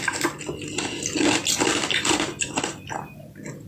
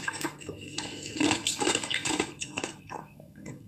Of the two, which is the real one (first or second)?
first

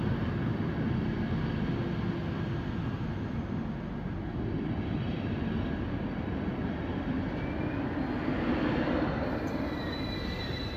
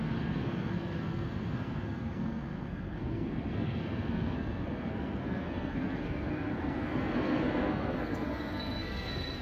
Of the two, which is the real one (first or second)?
first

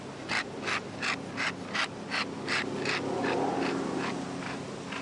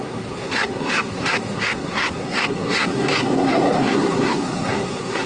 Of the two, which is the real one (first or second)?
first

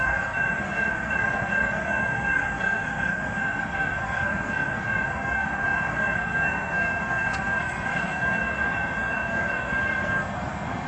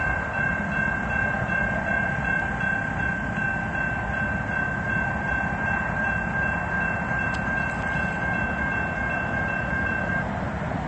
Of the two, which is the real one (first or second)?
second